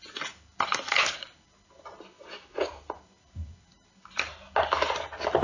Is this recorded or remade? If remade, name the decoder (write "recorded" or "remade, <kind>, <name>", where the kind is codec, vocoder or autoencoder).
recorded